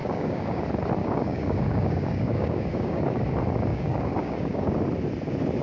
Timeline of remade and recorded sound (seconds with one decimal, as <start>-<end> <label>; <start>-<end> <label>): 0.0-0.6 remade; 0.6-1.0 recorded; 1.0-3.2 remade; 3.2-3.7 recorded; 3.7-4.7 remade; 4.7-5.6 recorded